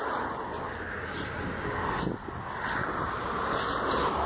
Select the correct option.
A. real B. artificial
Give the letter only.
A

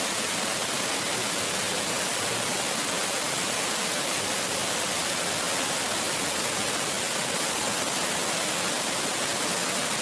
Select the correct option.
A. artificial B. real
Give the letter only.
B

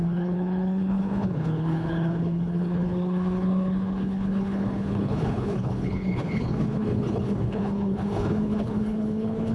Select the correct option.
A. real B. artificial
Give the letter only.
B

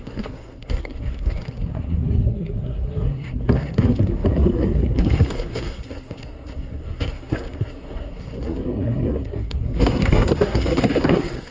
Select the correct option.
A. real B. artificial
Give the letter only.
B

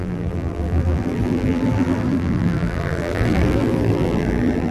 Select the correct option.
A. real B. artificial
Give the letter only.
B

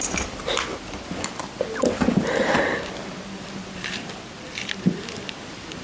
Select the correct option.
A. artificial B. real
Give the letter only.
B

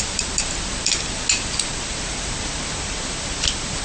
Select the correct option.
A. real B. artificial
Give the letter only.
A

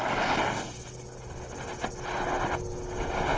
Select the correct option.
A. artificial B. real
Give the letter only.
B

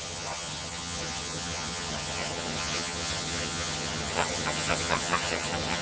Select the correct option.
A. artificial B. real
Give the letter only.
A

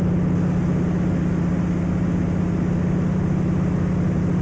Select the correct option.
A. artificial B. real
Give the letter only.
B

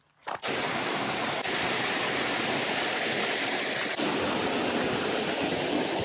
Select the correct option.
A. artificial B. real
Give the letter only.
B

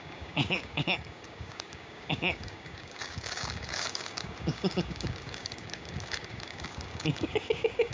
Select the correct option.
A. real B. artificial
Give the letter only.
B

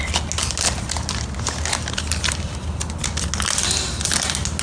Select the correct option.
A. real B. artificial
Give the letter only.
A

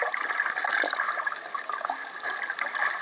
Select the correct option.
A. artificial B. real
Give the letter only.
B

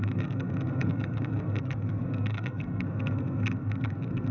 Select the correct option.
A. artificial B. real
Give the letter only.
A